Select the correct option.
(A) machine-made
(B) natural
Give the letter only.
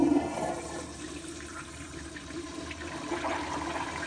A